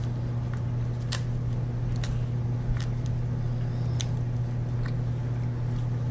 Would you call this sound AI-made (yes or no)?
no